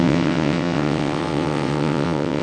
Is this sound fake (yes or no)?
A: yes